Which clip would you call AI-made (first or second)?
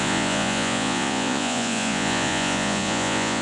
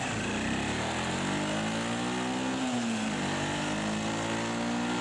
first